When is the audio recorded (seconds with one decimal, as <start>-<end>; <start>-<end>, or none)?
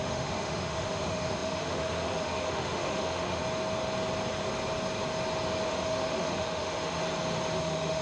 3.4-5.7; 7.0-7.6